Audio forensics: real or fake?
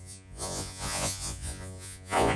fake